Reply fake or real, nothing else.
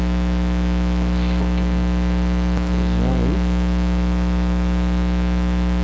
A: fake